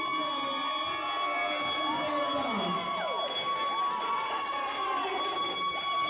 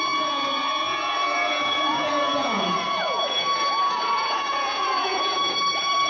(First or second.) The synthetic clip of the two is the second